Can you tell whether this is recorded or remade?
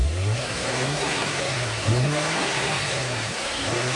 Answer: remade